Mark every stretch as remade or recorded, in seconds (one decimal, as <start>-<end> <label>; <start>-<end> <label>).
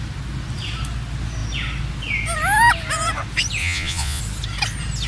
0.0-3.6 recorded; 3.6-4.2 remade; 4.2-5.1 recorded